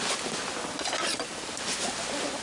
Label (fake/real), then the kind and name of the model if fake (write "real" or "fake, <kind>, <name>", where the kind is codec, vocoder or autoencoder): real